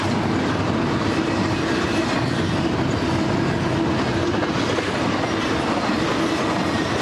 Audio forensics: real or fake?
real